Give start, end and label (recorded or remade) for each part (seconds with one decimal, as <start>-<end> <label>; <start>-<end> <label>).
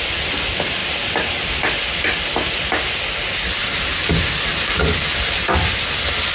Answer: 0.0-6.3 recorded